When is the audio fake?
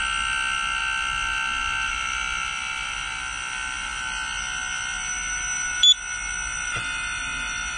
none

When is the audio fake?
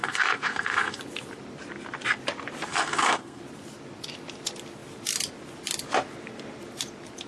0.0-1.0 (codec, SNAC); 2.7-3.4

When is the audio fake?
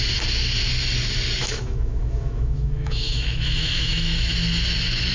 1.4-4.3 (autoencoder, DAC-VAE)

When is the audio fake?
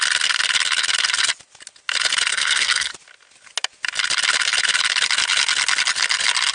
2.3-2.9 (codec, SNAC)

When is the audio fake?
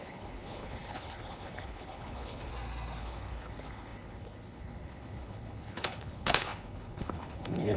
0.0-2.5 (codec, HILCodec); 3.0-7.8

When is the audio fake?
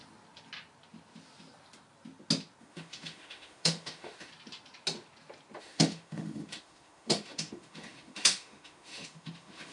2.6-4.3 (autoencoder, DAC-VAE); 5.6-9.7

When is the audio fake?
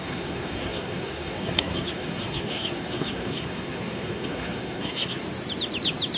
0.0-5.2 (codec, SNAC)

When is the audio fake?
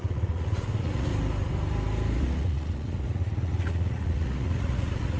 0.0-1.1 (vocoder, Vocos); 2.2-5.2